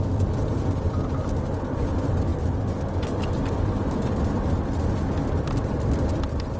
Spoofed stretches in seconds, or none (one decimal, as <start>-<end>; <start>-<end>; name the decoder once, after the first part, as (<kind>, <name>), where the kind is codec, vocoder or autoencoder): 0.0-2.3 (vocoder, BigVGAN v2); 5.4-6.6